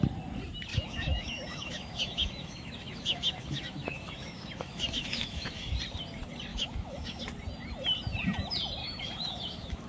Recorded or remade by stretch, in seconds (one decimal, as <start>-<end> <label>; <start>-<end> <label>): 0.0-0.7 recorded; 0.7-5.7 remade; 5.7-6.5 recorded; 6.5-7.2 remade; 7.2-8.8 recorded; 8.8-9.9 remade